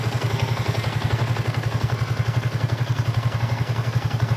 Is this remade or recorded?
remade